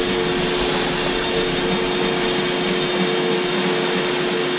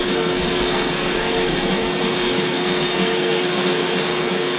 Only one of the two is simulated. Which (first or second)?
second